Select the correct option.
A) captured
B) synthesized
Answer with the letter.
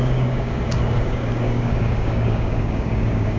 B